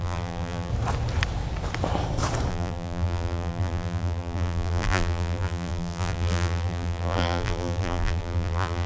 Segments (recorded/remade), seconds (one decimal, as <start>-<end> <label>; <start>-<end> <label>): 0.0-0.7 remade; 0.7-2.5 recorded; 2.5-8.9 remade